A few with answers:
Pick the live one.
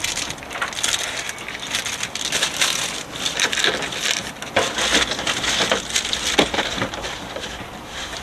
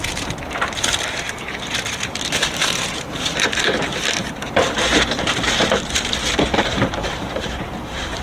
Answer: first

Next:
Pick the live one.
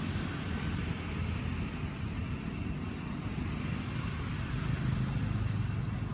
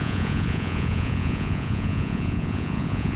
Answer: first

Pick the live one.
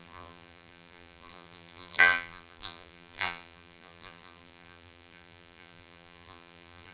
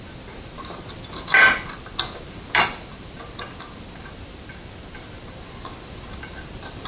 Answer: second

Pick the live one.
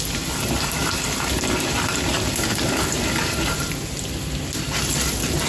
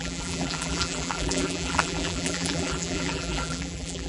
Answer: first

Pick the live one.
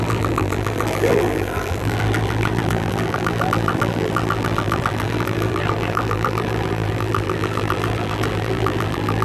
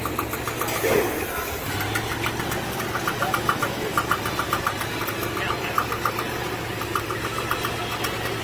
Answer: second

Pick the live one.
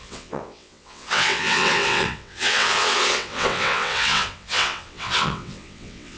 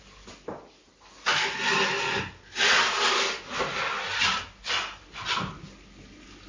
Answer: second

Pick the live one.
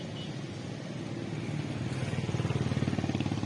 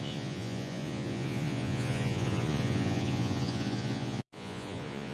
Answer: first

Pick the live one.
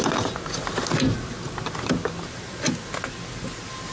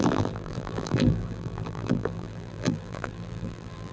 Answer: first